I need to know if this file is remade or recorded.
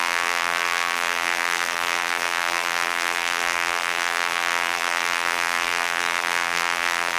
remade